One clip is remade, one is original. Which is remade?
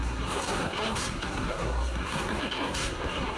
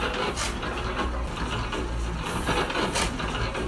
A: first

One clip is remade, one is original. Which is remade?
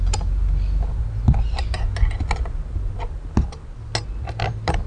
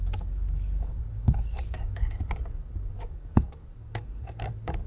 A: second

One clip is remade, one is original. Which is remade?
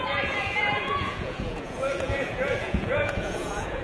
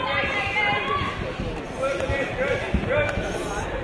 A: first